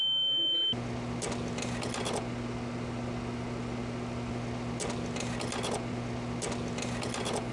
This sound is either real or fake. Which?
real